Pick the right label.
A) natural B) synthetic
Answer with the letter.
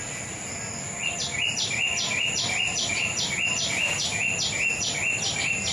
A